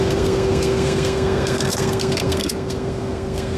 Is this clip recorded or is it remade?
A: remade